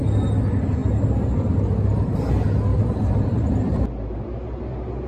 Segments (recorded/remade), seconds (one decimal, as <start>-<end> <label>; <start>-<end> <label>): 0.0-0.8 recorded; 0.8-1.3 remade; 1.3-2.7 recorded; 2.7-3.8 remade; 3.8-5.1 recorded